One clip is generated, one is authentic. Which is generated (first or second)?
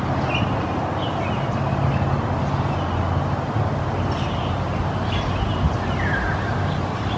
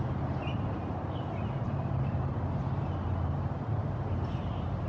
second